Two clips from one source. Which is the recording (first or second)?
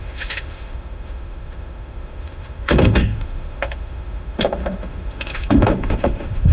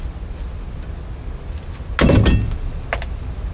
second